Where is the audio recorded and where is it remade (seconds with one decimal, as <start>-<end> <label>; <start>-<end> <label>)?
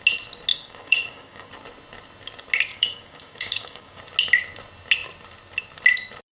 0.0-0.5 recorded; 0.5-1.5 remade; 1.5-2.7 recorded; 2.7-4.0 remade; 4.0-6.3 recorded